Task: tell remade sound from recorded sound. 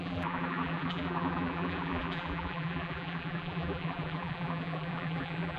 remade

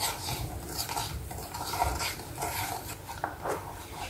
remade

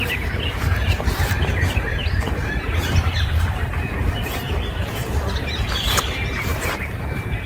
remade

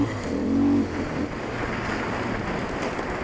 remade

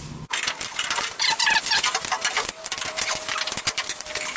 remade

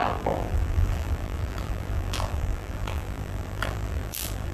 remade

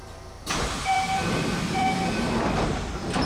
remade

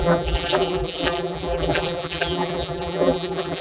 remade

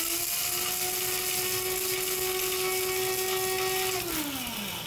recorded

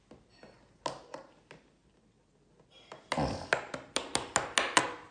recorded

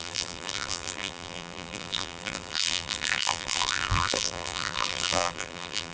remade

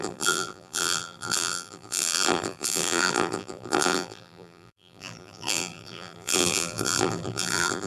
remade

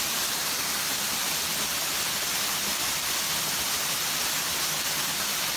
recorded